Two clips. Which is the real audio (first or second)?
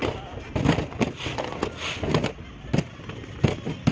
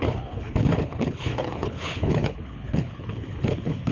first